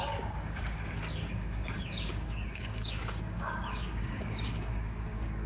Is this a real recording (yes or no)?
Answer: no